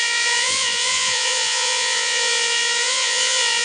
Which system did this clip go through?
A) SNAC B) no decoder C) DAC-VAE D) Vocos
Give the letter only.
D